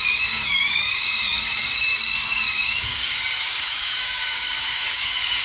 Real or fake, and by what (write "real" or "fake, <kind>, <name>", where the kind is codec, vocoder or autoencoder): fake, codec, DAC